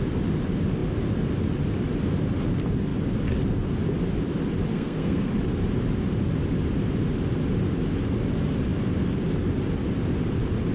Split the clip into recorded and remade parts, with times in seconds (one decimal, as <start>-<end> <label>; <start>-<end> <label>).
0.0-4.7 recorded; 4.7-5.3 remade; 5.3-10.7 recorded